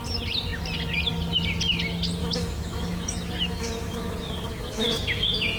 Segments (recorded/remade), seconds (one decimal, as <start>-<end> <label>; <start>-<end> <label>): 0.0-2.2 recorded; 2.2-5.6 remade